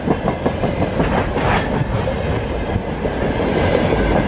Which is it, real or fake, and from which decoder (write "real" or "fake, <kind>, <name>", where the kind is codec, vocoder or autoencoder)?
real